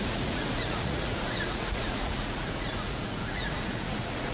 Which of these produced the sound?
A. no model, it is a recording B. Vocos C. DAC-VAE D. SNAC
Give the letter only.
B